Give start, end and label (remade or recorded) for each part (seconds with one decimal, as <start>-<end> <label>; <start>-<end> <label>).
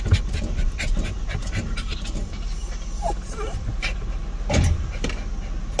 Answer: 0.0-1.4 recorded; 1.4-4.9 remade; 4.9-5.8 recorded